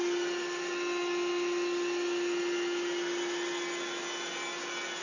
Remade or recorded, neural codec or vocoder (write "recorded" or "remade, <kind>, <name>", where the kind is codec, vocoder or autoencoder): recorded